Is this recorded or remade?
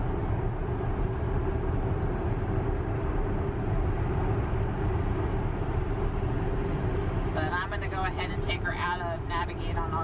recorded